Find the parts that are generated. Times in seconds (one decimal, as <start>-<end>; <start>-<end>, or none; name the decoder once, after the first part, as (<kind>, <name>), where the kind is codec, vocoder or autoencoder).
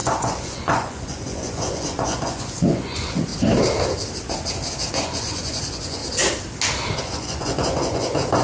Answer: 0.0-3.3 (vocoder, Vocos); 4.9-6.0; 7.0-8.4